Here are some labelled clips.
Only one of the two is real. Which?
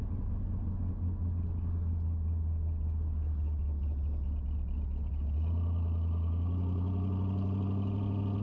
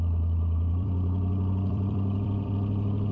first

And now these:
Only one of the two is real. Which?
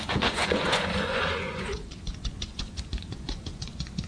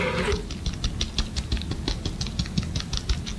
second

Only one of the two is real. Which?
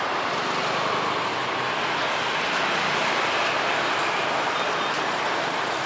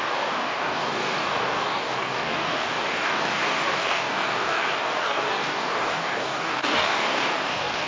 first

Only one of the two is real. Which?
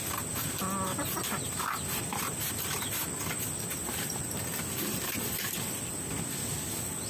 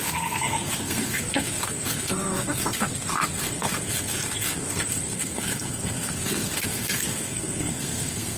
first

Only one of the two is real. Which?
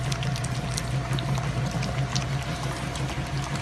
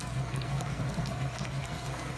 first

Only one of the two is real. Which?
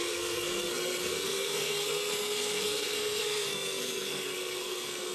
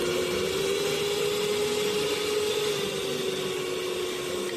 second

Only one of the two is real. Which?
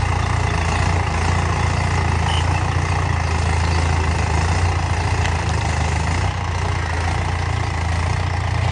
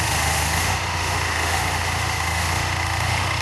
first